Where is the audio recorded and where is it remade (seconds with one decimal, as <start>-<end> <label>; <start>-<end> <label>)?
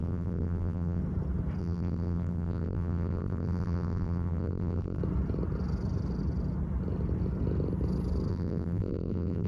0.0-1.0 remade; 1.0-1.6 recorded; 1.6-5.0 remade; 5.0-8.3 recorded; 8.3-9.5 remade